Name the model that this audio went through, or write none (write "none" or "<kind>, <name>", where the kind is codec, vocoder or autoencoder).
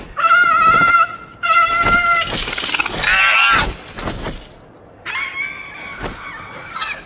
none